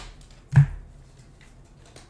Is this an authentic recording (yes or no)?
yes